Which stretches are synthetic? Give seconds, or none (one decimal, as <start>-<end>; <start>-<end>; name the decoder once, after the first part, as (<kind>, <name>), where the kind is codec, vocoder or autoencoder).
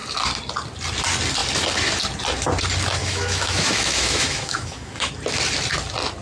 3.0-5.1 (autoencoder, DAC-VAE)